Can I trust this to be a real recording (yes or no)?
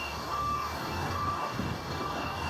no